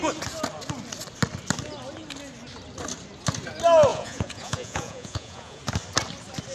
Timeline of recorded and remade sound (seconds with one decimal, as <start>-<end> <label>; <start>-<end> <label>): 0.0-3.9 recorded; 3.9-5.6 remade; 5.6-6.5 recorded